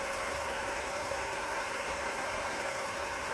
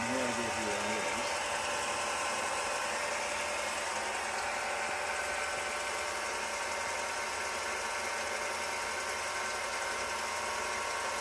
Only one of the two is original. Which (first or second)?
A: second